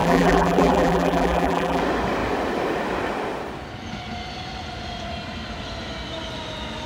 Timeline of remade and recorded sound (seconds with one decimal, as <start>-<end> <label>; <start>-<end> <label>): 0.0-1.8 remade; 1.8-6.9 recorded